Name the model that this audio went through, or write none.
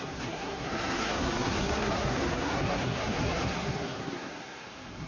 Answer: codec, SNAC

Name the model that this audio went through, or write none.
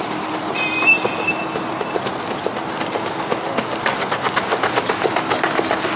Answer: none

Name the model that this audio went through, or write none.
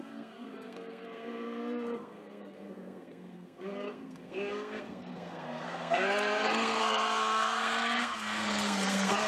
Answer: codec, SNAC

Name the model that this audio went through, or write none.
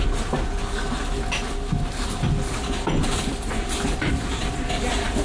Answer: none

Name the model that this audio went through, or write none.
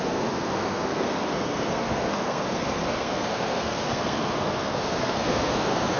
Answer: codec, SNAC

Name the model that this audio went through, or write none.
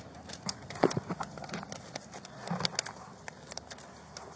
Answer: none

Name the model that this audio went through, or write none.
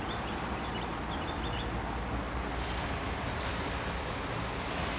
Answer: none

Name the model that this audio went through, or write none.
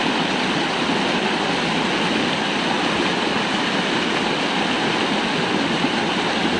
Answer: none